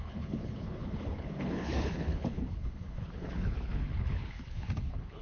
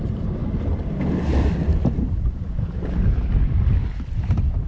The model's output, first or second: first